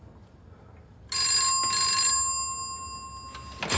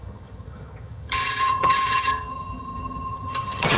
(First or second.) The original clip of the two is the first